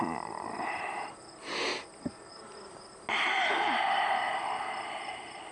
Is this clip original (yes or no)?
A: yes